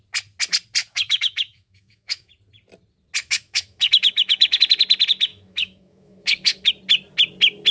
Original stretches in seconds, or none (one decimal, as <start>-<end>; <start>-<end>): 0.0-0.8; 2.3-3.2; 4.6-5.3; 6.7-7.7